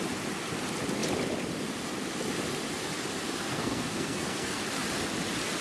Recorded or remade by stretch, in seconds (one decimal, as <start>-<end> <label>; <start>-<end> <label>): 0.0-3.5 recorded; 3.5-4.6 remade; 4.6-5.6 recorded